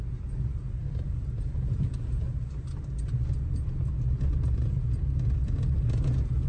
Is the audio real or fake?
real